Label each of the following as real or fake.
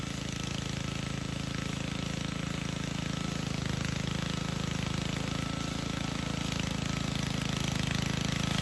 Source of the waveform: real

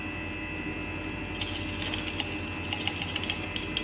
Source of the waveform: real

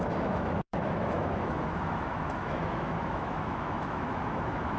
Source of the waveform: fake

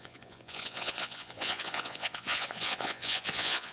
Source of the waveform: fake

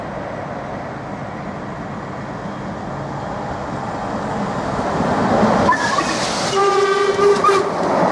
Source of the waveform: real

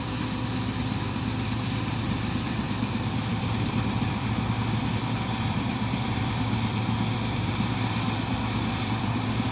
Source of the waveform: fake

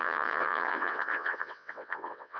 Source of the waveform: fake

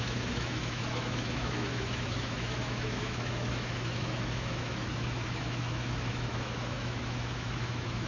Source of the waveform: fake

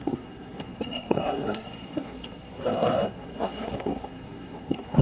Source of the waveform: fake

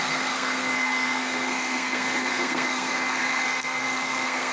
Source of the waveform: fake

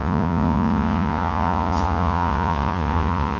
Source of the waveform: fake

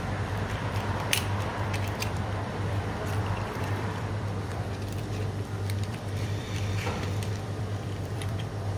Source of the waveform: fake